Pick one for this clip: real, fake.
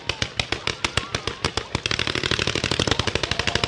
real